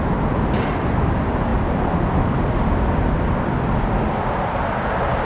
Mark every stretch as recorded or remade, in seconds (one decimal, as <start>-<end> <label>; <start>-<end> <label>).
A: 0.0-5.2 recorded